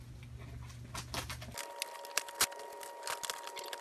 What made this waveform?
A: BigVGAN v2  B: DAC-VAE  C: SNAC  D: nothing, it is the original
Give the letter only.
D